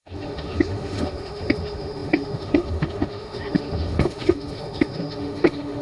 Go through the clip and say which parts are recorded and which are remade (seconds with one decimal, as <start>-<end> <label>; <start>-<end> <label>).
0.0-5.8 remade